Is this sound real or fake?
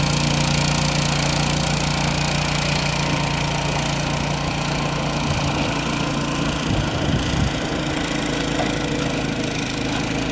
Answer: real